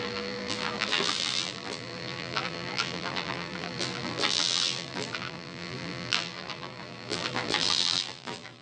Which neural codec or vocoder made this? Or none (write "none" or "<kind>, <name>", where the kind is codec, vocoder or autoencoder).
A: vocoder, BigVGAN v2